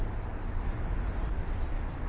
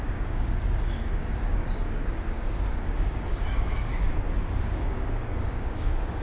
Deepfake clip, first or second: second